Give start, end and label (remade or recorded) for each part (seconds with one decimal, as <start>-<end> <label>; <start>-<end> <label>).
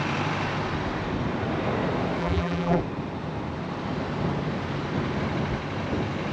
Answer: 0.0-2.2 recorded; 2.2-2.8 remade; 2.8-6.3 recorded